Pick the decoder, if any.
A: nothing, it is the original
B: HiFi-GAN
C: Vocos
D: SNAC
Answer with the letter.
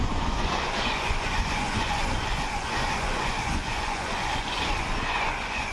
C